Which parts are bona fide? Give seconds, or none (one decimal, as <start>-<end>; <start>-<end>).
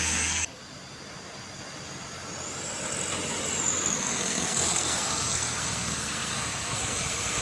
0.6-4.0